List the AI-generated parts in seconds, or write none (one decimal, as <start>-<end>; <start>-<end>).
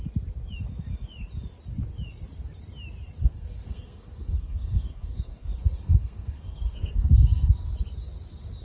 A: 3.2-7.5